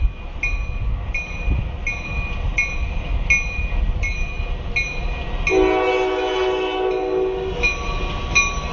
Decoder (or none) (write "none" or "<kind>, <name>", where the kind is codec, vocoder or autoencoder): none